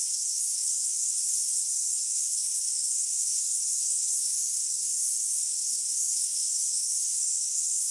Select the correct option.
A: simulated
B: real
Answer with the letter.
A